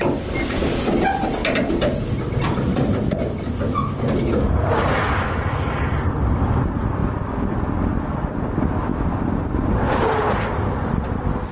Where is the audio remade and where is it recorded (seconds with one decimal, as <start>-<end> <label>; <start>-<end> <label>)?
0.0-7.0 recorded; 7.0-7.9 remade; 7.9-8.9 recorded; 8.9-9.7 remade; 9.7-11.5 recorded